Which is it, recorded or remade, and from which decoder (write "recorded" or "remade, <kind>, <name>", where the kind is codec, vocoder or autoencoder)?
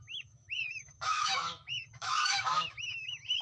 remade, autoencoder, DAC-VAE